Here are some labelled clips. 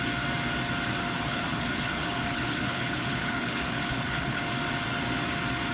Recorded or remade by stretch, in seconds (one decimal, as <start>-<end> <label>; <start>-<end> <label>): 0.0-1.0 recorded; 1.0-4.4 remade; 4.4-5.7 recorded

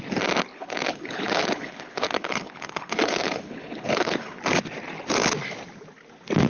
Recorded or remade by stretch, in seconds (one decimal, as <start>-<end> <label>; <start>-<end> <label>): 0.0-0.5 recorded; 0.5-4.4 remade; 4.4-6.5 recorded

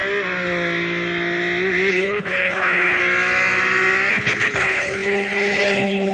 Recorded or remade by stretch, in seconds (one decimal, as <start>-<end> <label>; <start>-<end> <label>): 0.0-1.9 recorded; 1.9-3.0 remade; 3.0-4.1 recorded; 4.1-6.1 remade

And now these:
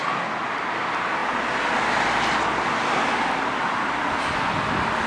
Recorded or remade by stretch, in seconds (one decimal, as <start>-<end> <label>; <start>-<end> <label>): 0.0-5.1 recorded